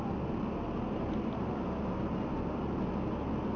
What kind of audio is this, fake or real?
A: real